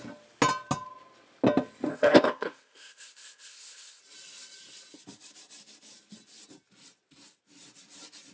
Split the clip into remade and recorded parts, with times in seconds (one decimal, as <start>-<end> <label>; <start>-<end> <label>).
0.0-1.9 recorded; 1.9-4.0 remade; 4.0-8.3 recorded